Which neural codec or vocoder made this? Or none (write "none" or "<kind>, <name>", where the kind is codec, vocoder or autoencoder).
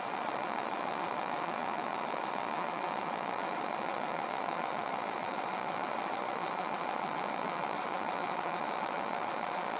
vocoder, Vocos